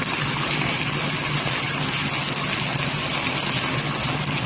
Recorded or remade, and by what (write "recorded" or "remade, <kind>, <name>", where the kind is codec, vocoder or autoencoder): recorded